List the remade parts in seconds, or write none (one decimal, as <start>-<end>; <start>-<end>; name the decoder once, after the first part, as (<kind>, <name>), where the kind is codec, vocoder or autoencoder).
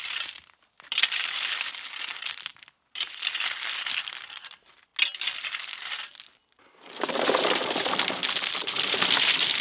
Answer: 0.0-4.9 (vocoder, BigVGAN v2); 5.6-9.6